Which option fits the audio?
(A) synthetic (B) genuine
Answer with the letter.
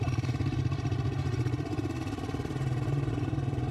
A